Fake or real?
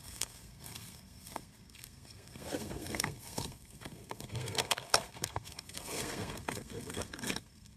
fake